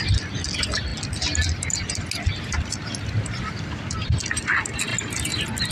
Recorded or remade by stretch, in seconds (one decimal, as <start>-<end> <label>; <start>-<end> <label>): 0.0-5.7 recorded

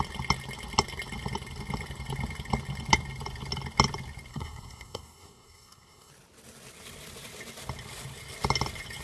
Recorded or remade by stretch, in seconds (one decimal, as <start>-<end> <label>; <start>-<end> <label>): 0.0-4.3 recorded; 4.3-6.1 remade; 6.1-9.0 recorded

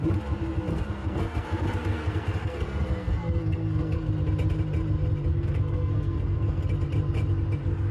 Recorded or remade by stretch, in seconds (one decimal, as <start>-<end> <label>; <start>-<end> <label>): 0.0-0.7 recorded; 0.7-4.1 remade; 4.1-5.3 recorded; 5.3-6.6 remade; 6.6-7.9 recorded

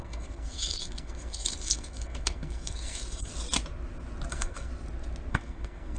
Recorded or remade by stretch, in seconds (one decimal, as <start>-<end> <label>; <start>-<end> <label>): 0.0-3.3 remade; 3.3-4.3 recorded; 4.3-4.7 remade; 4.7-5.3 recorded; 5.3-6.0 remade

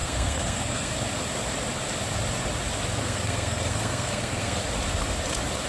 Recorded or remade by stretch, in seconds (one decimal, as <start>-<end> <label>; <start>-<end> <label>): 0.0-0.9 remade; 0.9-3.0 recorded; 3.0-4.6 remade; 4.6-5.7 recorded